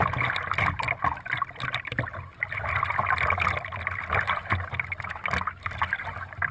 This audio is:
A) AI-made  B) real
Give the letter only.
B